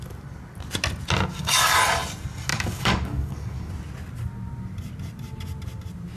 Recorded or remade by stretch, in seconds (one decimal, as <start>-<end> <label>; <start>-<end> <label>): 0.0-1.3 recorded; 1.3-1.8 remade; 1.8-2.5 recorded; 2.5-3.7 remade; 3.7-6.2 recorded